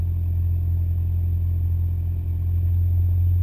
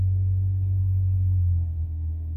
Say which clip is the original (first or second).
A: first